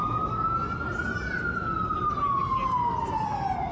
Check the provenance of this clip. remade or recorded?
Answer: recorded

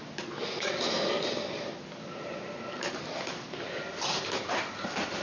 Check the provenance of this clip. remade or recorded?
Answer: recorded